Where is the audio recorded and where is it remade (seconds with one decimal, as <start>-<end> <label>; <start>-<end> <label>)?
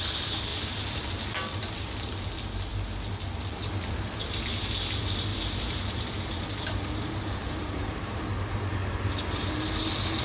0.0-0.5 recorded; 0.5-1.2 remade; 1.2-5.3 recorded; 5.3-8.2 remade; 8.2-10.2 recorded